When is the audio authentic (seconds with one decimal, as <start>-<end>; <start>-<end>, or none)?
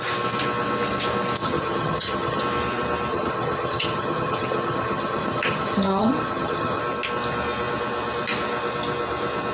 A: 0.0-1.4; 2.4-3.1; 6.8-9.5